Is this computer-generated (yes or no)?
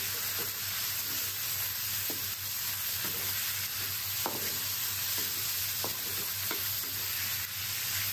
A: no